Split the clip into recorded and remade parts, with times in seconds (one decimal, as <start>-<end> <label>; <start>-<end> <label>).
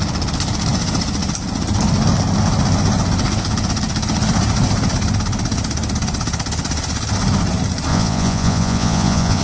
0.0-7.9 recorded; 7.9-9.4 remade